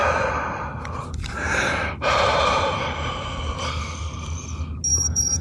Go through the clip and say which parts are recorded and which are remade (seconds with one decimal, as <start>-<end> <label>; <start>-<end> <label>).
0.0-3.2 remade; 3.2-4.9 recorded; 4.9-5.4 remade